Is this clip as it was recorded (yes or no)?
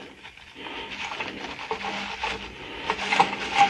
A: yes